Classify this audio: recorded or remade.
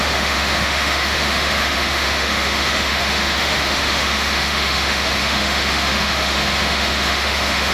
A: remade